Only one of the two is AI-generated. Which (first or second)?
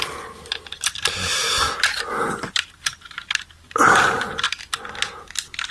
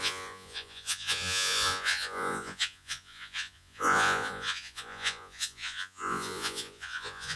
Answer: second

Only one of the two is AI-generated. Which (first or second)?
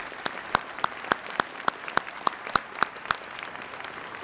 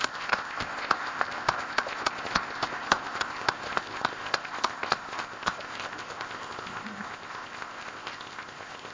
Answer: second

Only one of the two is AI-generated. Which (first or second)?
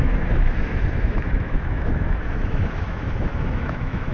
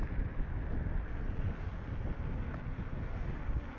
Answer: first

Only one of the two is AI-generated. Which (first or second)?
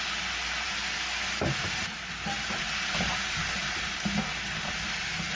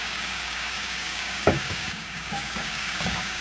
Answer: second